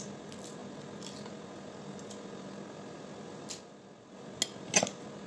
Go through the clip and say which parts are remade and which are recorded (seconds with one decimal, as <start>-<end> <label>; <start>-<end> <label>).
0.0-5.3 recorded